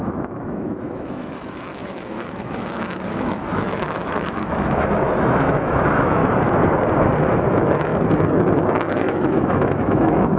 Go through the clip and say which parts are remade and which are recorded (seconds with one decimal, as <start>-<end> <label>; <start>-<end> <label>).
0.0-6.2 remade; 6.2-7.5 recorded; 7.5-7.9 remade; 7.9-8.9 recorded; 8.9-10.4 remade